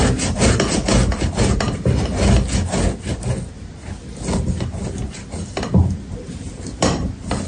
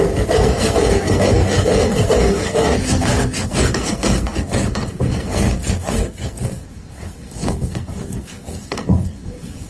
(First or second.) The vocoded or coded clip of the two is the second